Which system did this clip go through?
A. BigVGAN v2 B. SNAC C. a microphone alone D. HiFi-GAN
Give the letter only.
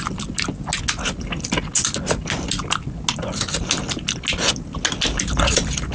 C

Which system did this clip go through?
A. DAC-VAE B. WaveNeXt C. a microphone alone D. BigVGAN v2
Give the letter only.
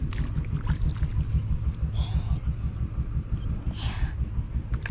C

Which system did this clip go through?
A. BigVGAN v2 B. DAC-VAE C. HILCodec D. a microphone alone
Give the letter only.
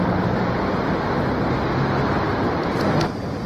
D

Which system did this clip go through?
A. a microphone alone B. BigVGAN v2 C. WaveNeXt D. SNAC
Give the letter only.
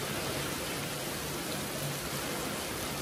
A